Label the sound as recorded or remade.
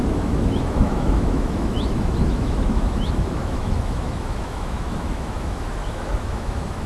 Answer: remade